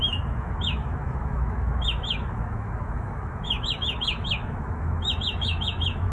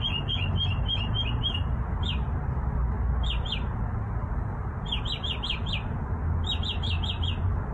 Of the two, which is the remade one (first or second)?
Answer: first